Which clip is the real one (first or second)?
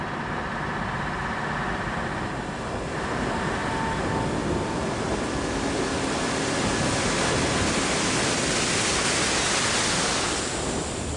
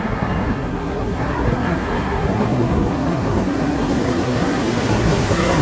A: first